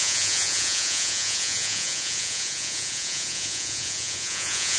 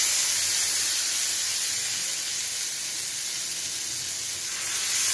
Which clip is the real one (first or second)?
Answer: second